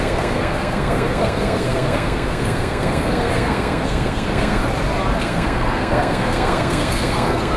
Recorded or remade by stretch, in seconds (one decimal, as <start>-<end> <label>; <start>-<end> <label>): 0.0-4.6 remade; 4.6-5.2 recorded; 5.2-7.6 remade